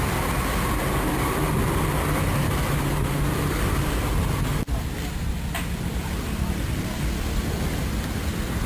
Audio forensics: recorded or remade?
recorded